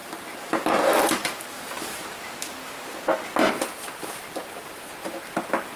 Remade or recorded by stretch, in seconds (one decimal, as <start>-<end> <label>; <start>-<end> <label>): 0.0-1.8 remade; 1.8-5.8 recorded